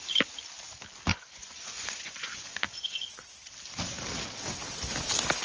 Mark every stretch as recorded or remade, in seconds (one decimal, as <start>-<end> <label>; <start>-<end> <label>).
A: 0.0-1.1 recorded; 1.1-3.5 remade; 3.5-5.4 recorded